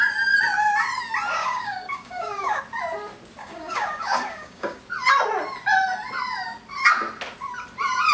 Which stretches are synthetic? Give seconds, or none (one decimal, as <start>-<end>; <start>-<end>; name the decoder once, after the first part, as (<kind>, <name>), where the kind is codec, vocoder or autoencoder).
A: 1.4-2.6 (codec, DAC); 3.4-4.8